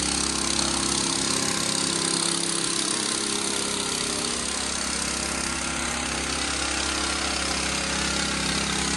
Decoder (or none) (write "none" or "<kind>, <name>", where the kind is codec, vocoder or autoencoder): none